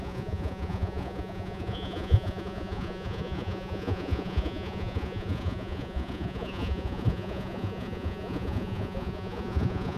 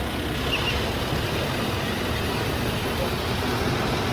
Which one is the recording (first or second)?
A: second